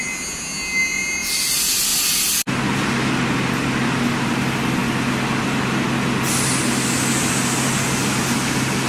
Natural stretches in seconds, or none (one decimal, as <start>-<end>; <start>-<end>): 0.0-8.9